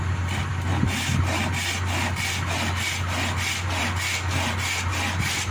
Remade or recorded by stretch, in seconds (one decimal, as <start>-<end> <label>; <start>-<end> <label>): 0.0-5.5 recorded